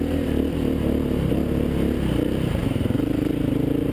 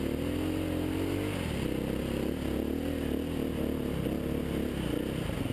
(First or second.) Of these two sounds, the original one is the second